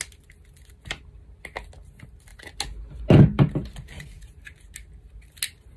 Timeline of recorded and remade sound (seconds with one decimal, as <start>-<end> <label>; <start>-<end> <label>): 0.0-5.8 recorded